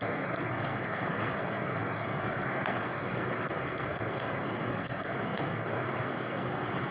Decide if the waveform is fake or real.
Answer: fake